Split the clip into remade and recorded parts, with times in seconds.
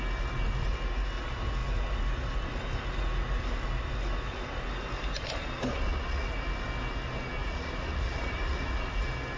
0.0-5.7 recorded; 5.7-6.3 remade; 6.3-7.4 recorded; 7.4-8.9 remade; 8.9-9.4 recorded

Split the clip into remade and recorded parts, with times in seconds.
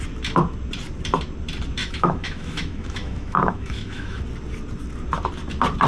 0.0-1.8 recorded; 1.8-4.2 remade; 4.2-5.9 recorded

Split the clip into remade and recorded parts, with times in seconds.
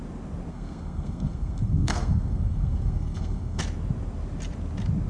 0.0-0.5 recorded; 0.5-3.6 remade; 3.6-5.1 recorded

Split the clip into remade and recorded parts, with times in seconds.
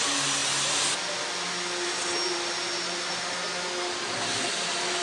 0.0-5.0 recorded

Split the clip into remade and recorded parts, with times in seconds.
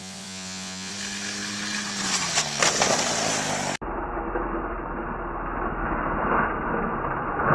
0.0-0.9 remade; 0.9-7.5 recorded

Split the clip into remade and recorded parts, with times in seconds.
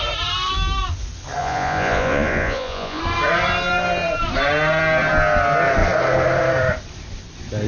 0.0-1.4 recorded; 1.4-3.0 remade; 3.0-7.7 recorded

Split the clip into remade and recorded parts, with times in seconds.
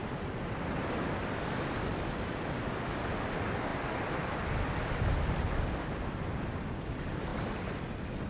0.0-8.3 recorded